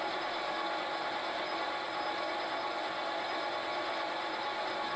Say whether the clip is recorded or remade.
recorded